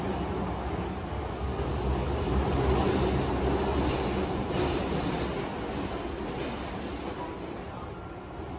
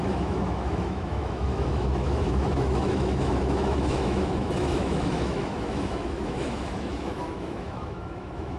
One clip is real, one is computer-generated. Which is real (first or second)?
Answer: first